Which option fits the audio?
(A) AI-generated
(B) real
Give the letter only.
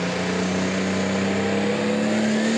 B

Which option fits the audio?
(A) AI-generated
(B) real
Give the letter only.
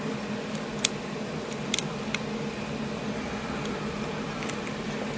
B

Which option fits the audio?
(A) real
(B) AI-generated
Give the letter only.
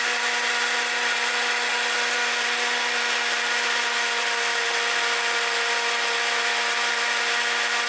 A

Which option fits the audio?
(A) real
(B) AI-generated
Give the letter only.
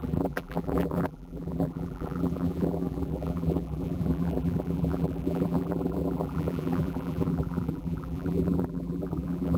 B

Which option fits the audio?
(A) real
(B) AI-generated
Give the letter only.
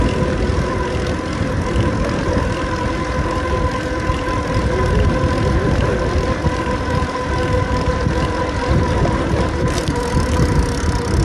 A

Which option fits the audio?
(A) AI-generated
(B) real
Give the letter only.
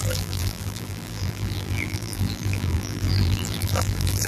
A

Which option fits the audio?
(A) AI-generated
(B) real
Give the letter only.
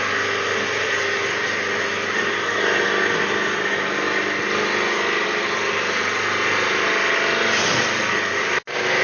B